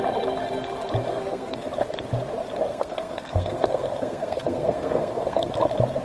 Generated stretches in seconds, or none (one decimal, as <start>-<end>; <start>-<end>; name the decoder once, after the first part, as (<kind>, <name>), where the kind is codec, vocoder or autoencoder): 1.1-1.7 (codec, SNAC); 2.7-5.5